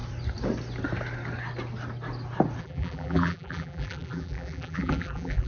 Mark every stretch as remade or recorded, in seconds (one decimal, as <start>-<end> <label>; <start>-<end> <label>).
0.0-2.6 recorded; 2.6-5.5 remade